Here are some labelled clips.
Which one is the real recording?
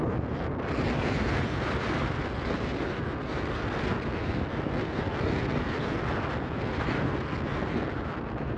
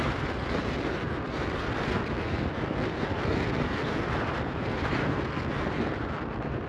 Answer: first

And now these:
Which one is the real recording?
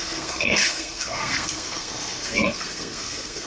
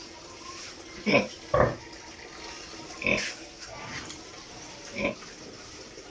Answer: second